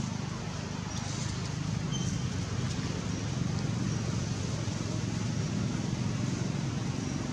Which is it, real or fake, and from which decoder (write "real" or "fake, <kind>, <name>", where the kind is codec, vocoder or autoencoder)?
real